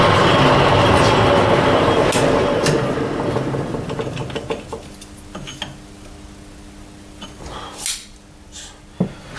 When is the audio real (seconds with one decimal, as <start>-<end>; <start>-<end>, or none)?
0.0-9.4